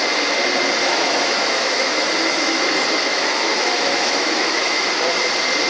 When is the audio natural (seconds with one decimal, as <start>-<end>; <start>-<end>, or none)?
0.0-0.8; 2.7-3.1; 4.9-5.7

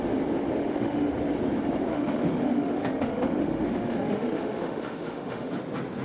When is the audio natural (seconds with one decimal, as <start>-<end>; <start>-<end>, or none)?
0.0-0.6; 1.1-1.9; 5.5-6.0